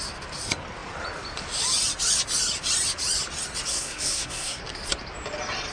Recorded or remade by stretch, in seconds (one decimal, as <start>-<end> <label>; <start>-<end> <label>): 0.0-3.7 recorded; 3.7-4.6 remade; 4.6-5.7 recorded